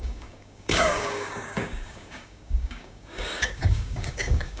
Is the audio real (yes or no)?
no